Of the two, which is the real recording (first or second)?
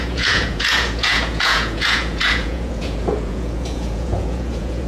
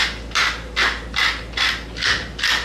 second